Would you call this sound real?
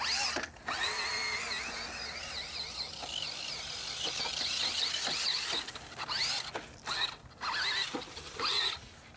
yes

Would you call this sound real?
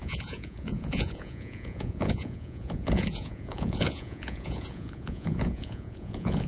no